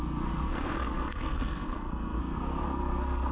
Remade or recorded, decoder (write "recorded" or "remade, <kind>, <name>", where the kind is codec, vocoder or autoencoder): remade, codec, SNAC